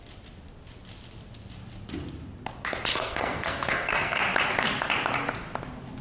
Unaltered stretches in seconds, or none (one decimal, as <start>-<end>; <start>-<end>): 0.0-2.9; 4.2-6.0